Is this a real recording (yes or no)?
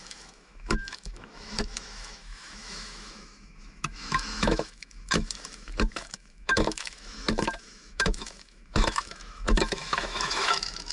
no